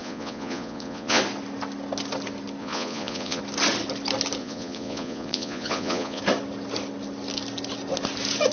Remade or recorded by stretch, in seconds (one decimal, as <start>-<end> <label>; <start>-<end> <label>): 0.0-1.2 remade; 1.2-2.6 recorded; 2.6-3.4 remade; 3.4-4.4 recorded; 4.4-6.2 remade; 6.2-8.5 recorded